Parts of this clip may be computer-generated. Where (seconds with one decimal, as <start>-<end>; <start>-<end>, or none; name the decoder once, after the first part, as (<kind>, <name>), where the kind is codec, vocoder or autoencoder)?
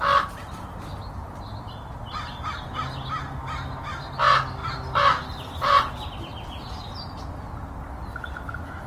none